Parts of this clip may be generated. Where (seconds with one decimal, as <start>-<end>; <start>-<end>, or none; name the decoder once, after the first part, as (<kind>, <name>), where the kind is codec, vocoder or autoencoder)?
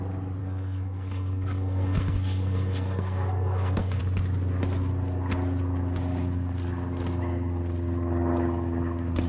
0.4-4.0 (codec, SNAC)